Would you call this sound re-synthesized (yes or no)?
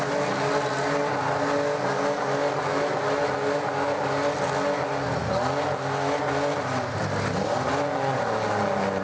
no